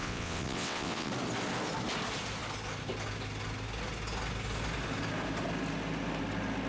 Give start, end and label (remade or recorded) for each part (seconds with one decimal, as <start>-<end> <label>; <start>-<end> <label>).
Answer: 0.0-1.1 remade; 1.1-6.7 recorded